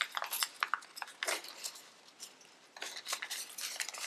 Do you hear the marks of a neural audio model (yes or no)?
no